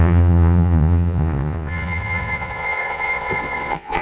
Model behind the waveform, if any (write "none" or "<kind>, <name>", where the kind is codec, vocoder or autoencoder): vocoder, Vocos